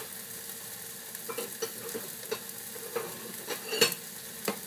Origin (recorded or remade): recorded